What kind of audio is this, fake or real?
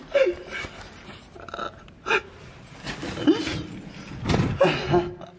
real